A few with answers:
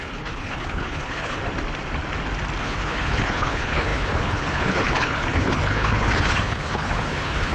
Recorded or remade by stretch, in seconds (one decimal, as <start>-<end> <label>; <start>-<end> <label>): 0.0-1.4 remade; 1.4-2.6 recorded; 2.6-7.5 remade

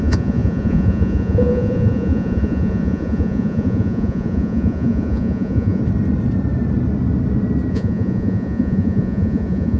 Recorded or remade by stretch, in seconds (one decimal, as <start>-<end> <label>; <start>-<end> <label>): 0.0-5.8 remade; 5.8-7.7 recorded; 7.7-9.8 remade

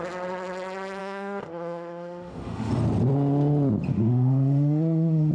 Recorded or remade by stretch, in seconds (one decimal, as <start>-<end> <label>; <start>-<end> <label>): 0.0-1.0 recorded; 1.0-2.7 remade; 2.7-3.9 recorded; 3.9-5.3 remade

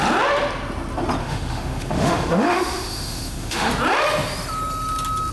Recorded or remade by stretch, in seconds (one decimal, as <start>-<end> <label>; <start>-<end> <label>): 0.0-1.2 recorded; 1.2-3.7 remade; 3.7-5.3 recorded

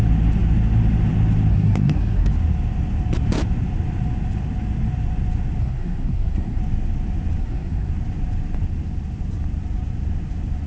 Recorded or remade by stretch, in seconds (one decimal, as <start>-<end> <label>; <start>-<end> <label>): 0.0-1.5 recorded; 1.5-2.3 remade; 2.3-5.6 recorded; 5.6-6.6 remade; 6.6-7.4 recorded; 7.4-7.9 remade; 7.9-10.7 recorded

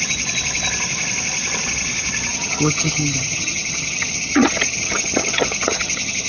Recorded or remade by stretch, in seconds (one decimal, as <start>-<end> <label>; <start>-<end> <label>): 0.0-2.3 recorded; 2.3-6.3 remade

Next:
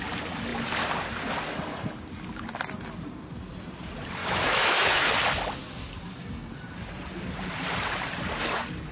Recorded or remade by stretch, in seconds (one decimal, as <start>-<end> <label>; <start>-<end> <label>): 0.0-4.2 recorded; 4.2-5.1 remade; 5.1-8.9 recorded